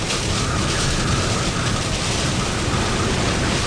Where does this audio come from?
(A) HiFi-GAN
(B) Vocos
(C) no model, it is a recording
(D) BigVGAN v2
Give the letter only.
C